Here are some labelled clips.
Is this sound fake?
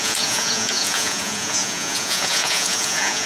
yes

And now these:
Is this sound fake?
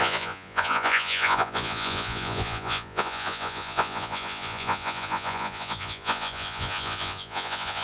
yes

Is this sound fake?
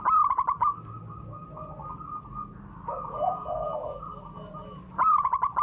no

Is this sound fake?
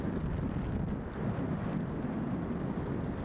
no